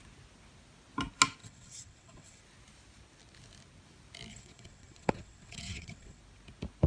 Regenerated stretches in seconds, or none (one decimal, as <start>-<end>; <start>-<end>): 1.4-2.4; 4.3-6.2